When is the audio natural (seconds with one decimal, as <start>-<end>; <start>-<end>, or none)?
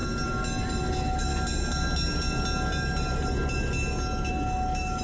0.0-0.9; 1.3-4.3